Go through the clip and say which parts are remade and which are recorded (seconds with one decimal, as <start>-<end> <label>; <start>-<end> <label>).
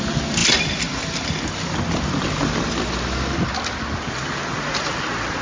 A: 0.0-5.4 recorded